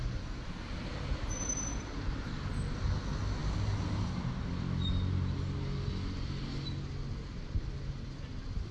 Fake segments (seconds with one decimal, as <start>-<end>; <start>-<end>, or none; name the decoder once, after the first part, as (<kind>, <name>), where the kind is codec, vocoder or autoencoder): none